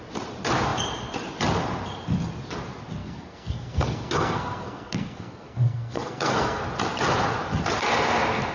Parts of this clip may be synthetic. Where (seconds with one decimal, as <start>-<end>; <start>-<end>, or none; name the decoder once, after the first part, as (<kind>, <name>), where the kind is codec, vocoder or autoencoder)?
3.0-6.6 (codec, SNAC)